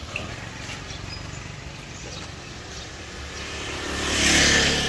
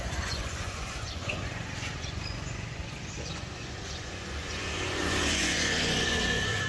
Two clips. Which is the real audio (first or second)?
first